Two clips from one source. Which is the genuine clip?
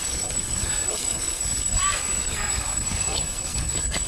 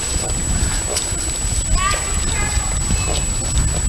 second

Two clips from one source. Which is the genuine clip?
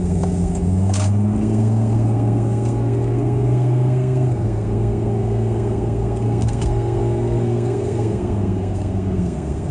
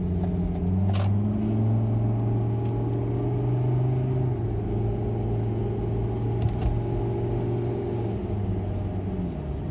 second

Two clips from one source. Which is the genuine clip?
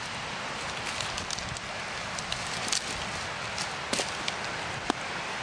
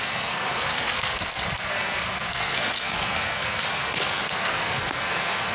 first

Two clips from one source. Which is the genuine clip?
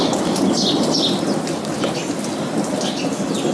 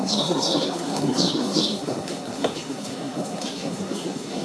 first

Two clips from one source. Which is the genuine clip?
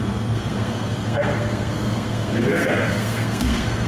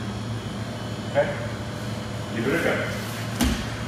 second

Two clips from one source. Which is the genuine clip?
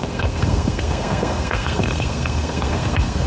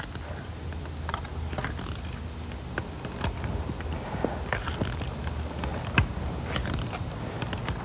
second